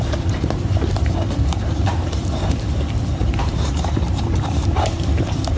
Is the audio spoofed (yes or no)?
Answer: yes